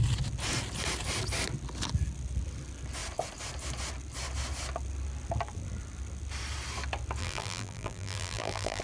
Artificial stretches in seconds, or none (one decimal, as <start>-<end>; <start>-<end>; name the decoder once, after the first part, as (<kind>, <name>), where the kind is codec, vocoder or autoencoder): 7.2-8.8 (vocoder, BigVGAN v2)